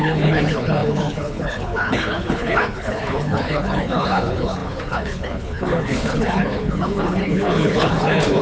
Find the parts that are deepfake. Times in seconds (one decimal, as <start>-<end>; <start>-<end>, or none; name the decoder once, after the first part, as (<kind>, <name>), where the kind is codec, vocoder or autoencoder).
0.0-8.4 (codec, HILCodec)